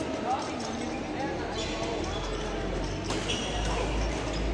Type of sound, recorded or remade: recorded